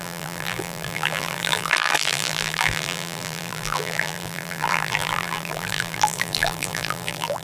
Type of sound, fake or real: fake